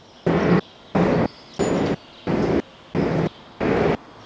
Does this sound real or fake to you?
real